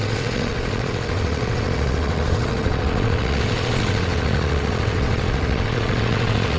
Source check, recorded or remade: remade